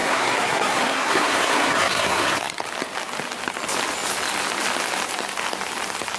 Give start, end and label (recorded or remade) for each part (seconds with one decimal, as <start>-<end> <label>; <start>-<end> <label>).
0.0-2.6 remade; 2.6-6.2 recorded